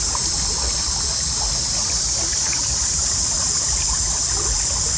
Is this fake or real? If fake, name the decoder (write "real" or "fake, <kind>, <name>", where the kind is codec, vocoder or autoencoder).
real